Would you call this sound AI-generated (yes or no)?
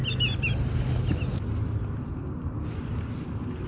no